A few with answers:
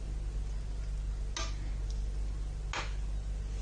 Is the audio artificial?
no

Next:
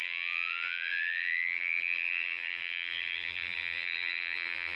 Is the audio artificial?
yes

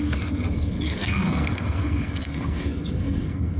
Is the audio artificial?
yes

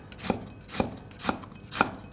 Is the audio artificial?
no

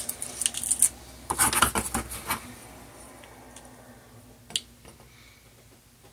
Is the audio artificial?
no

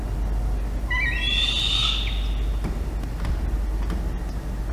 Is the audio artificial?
no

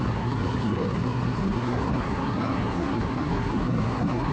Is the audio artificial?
yes